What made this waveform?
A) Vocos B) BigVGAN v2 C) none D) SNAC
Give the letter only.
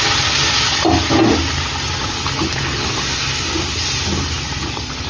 C